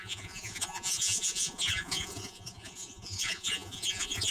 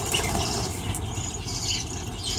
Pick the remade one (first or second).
first